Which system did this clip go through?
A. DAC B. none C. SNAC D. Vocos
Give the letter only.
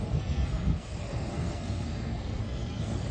C